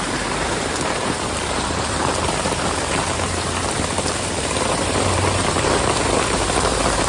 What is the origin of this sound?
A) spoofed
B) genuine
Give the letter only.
A